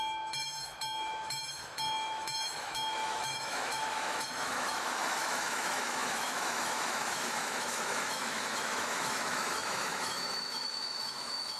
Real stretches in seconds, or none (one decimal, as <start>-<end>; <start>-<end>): none